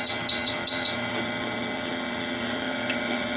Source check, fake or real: fake